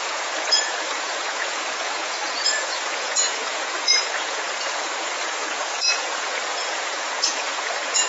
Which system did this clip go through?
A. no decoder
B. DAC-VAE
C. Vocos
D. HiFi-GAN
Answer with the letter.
C